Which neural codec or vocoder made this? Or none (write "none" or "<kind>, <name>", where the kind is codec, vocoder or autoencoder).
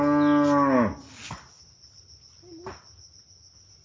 none